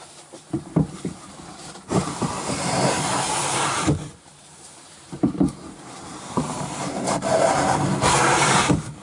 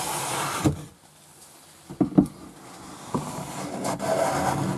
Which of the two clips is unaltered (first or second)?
second